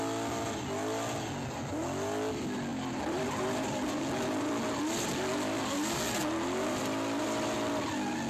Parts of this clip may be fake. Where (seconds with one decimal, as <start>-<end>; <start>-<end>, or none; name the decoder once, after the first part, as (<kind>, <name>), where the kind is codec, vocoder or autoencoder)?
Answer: 2.7-4.0 (vocoder, BigVGAN v2)